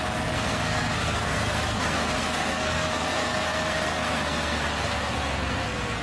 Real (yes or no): no